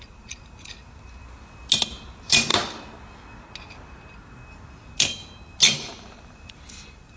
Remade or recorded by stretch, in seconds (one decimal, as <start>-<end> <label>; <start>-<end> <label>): 0.0-1.2 remade; 1.2-1.9 recorded; 1.9-2.5 remade; 2.5-5.8 recorded; 5.8-7.2 remade